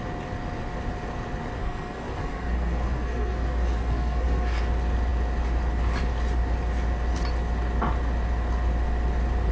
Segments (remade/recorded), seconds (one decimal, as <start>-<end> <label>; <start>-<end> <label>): 0.0-1.6 recorded; 1.6-4.6 remade; 4.6-9.5 recorded